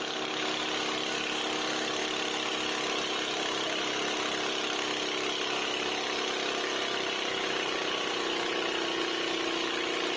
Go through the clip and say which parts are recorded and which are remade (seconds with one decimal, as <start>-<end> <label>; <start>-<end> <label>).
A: 0.0-10.2 recorded